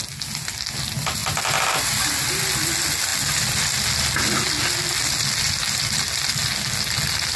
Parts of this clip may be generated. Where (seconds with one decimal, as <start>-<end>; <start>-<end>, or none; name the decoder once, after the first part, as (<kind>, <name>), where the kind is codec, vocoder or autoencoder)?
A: 1.2-2.4 (vocoder, BigVGAN v2)